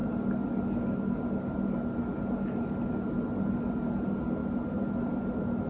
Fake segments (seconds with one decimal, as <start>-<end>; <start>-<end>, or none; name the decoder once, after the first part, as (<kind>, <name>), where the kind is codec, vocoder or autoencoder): none